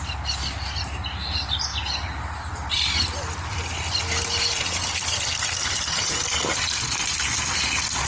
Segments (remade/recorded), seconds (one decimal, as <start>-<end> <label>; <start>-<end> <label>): 0.0-1.7 recorded; 1.7-5.5 remade; 5.5-8.1 recorded